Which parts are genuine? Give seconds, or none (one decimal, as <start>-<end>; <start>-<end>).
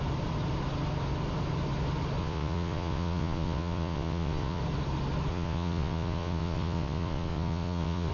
0.0-2.2; 4.6-5.3